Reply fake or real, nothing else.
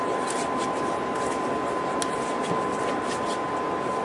real